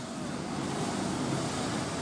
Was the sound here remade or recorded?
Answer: recorded